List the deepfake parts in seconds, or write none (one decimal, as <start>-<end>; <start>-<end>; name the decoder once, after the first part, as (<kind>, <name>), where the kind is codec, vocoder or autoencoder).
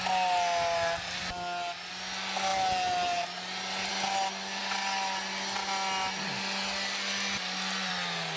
none